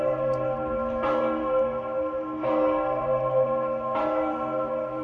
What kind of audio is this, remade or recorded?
remade